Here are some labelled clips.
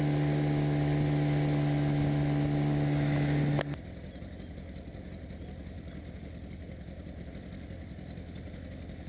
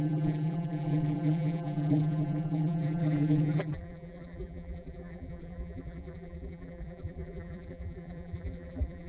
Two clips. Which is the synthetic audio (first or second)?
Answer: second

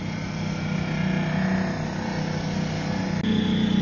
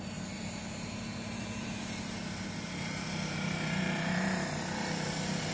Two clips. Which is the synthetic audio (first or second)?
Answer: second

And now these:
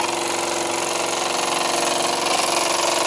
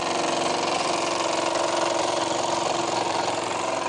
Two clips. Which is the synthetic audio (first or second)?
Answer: second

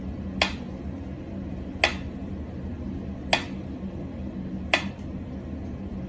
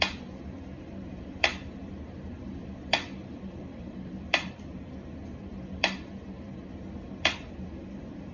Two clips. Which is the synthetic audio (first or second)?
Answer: second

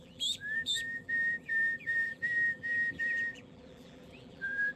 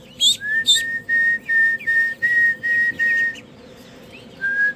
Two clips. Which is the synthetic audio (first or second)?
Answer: first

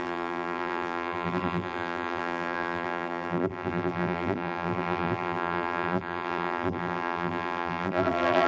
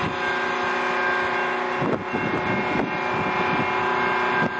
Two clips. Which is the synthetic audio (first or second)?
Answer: first